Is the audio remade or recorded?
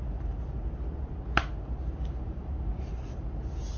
recorded